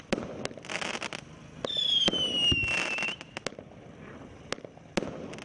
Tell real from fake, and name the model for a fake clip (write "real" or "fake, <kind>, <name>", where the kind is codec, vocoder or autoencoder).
real